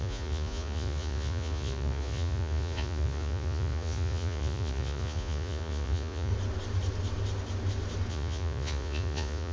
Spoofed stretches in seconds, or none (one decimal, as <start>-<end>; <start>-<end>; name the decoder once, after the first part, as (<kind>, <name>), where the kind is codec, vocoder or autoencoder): 0.0-6.3 (vocoder, Vocos); 8.1-9.5